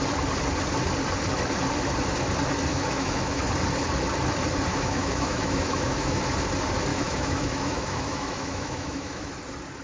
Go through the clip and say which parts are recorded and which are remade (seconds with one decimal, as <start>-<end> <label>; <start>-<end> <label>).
0.0-2.7 recorded; 2.7-3.5 remade; 3.5-4.7 recorded; 4.7-6.2 remade; 6.2-6.9 recorded; 6.9-9.3 remade; 9.3-9.8 recorded